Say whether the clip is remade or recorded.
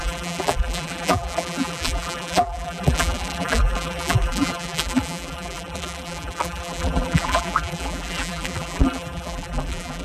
remade